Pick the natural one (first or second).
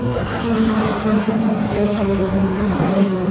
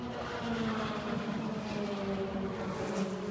second